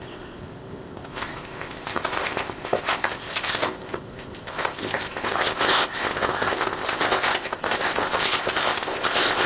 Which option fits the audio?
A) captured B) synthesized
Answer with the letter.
B